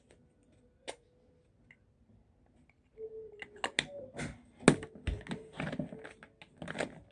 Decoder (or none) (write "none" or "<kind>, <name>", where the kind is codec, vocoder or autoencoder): none